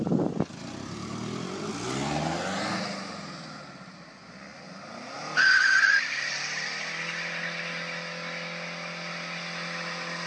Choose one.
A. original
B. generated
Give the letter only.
A